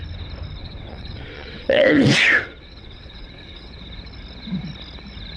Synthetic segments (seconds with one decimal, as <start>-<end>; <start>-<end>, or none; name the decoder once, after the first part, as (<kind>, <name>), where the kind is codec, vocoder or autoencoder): 0.6-3.8 (vocoder, WaveNeXt)